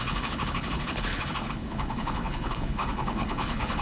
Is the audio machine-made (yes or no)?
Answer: yes